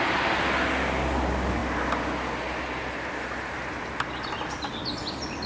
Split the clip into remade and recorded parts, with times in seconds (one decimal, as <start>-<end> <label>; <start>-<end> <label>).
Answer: 0.0-5.5 recorded